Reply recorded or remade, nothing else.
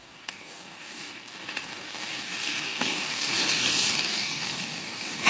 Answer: remade